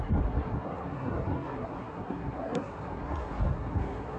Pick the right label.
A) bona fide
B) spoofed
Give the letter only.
B